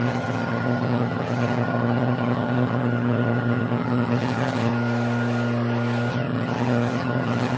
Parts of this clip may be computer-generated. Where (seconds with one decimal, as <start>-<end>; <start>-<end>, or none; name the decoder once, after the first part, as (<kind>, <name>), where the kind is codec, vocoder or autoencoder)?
0.0-4.7 (vocoder, HiFi-GAN); 6.1-7.6